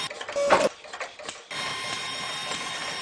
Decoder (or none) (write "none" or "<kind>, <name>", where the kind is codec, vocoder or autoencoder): none